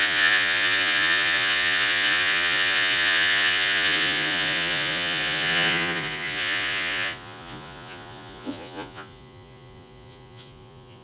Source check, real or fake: fake